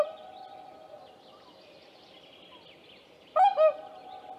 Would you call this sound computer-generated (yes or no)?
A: no